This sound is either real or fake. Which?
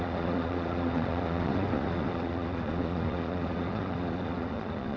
fake